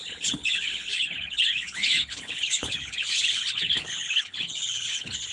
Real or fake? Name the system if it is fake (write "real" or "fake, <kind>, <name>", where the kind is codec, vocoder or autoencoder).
fake, codec, HILCodec